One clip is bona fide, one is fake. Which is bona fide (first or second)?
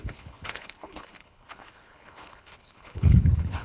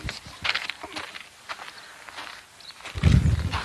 second